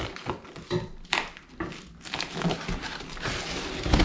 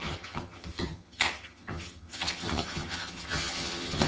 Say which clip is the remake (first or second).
second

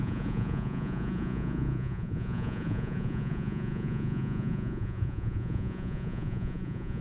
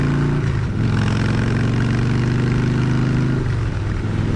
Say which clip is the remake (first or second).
first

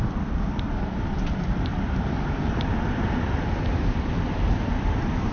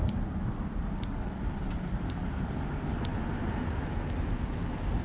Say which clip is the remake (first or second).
first